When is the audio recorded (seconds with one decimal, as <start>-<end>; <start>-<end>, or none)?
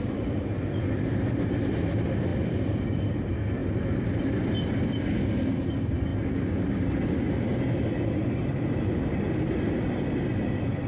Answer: 0.0-10.9